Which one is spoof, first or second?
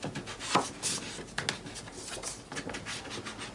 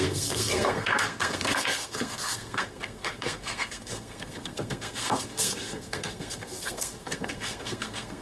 second